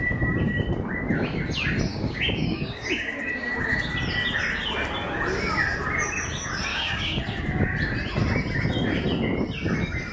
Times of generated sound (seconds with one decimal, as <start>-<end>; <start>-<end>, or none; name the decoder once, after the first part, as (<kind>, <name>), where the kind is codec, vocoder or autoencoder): 1.9-3.2 (codec, DAC); 6.7-7.2